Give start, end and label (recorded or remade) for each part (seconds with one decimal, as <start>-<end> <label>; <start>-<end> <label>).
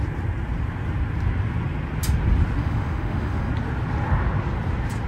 0.0-2.6 recorded; 2.6-3.5 remade; 3.5-5.1 recorded